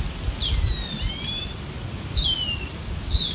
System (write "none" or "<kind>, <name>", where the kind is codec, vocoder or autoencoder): none